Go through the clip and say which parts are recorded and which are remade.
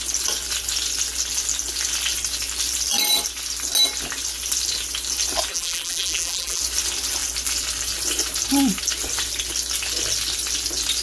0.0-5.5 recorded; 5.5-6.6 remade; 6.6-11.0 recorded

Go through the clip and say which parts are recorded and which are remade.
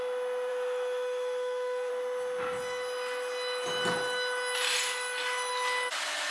0.0-0.5 recorded; 0.5-1.9 remade; 1.9-6.3 recorded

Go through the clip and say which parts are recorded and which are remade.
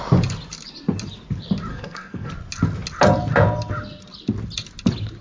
0.0-1.7 recorded; 1.7-2.3 remade; 2.3-5.2 recorded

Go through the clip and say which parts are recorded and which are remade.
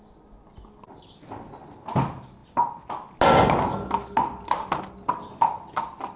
0.0-6.2 recorded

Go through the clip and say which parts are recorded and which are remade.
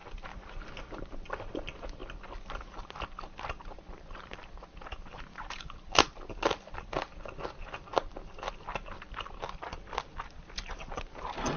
0.0-11.6 recorded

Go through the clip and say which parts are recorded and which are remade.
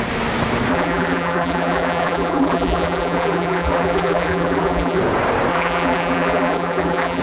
0.0-0.7 recorded; 0.7-5.0 remade; 5.0-5.5 recorded; 5.5-7.2 remade